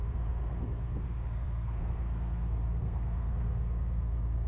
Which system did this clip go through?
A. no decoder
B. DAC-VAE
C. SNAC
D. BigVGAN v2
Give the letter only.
C